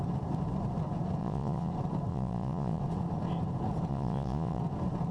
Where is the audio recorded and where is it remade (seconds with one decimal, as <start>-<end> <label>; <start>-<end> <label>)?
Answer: 0.0-1.2 recorded; 1.2-1.7 remade; 1.7-2.1 recorded; 2.1-2.8 remade; 2.8-3.9 recorded; 3.9-4.6 remade; 4.6-5.1 recorded